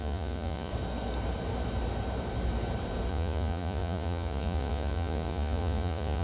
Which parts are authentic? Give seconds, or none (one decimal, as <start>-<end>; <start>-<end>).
0.7-3.1

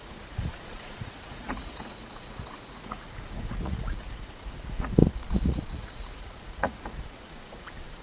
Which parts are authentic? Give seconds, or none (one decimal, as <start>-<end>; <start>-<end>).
none

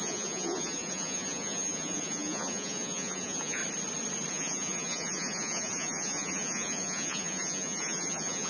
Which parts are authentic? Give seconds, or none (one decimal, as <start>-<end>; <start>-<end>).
3.6-4.3

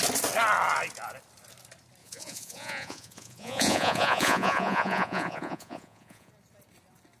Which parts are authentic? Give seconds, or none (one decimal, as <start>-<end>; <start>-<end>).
0.0-2.0; 6.3-7.2

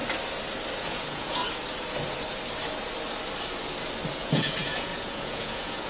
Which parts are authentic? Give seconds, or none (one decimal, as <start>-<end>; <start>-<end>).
0.0-0.8; 1.4-4.1